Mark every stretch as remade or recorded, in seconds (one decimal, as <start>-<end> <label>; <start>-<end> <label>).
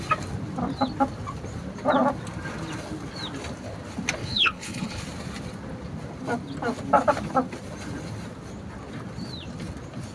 0.0-4.2 recorded; 4.2-5.0 remade; 5.0-10.1 recorded